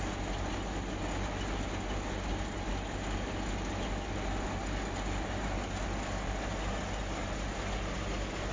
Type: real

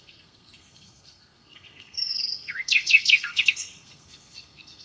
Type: fake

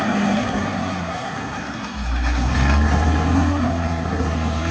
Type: fake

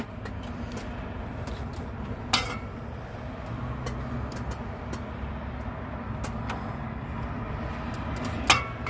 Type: real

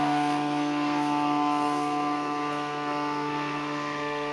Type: fake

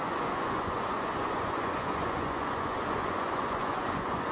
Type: fake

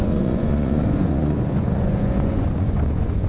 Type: fake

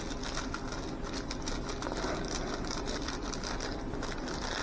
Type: real